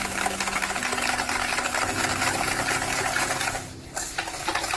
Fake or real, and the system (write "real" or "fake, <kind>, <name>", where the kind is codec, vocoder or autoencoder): real